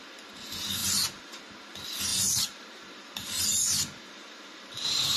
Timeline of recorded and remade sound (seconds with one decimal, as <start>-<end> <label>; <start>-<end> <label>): 0.0-0.8 recorded; 0.8-1.4 remade; 1.4-2.1 recorded; 2.1-5.2 remade